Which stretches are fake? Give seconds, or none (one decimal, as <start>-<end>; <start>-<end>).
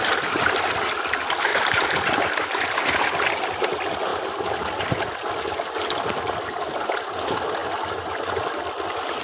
1.5-2.8; 4.1-4.9